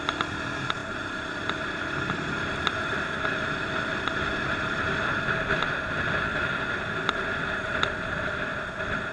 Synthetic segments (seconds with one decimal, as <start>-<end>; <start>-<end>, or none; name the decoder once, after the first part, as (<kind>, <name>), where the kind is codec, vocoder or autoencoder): none